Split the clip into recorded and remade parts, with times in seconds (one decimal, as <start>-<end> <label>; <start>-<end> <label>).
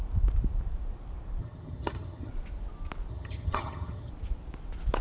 0.0-1.4 recorded; 1.4-2.3 remade; 2.3-3.1 recorded; 3.1-4.1 remade; 4.1-5.0 recorded